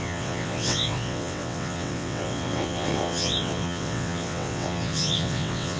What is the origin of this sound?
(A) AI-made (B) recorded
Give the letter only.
A